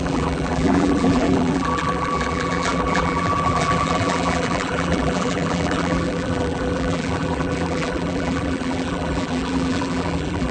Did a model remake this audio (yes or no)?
yes